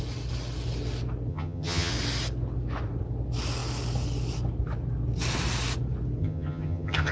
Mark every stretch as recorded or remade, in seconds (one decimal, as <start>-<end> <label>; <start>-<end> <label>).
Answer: 0.0-1.3 recorded; 1.3-1.9 remade; 1.9-6.2 recorded; 6.2-7.1 remade